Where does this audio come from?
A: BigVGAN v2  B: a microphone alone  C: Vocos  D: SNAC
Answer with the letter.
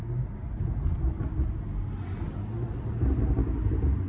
B